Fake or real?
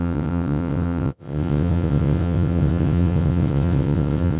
fake